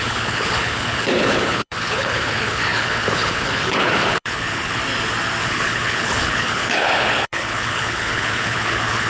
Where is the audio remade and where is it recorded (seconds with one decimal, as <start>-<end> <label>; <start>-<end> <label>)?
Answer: 0.0-4.8 remade; 4.8-5.4 recorded; 5.4-9.1 remade